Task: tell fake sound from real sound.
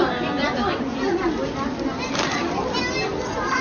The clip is real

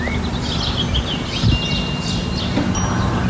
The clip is real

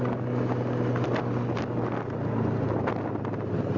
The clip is real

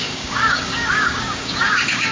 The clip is fake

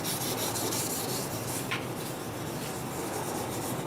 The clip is real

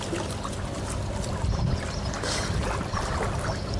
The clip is real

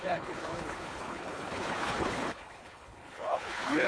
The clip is fake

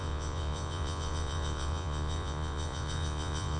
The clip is fake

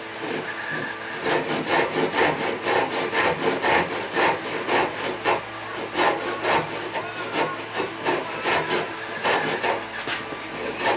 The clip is real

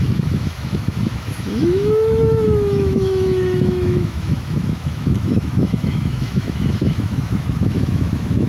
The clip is fake